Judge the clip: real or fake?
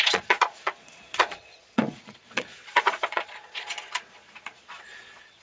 fake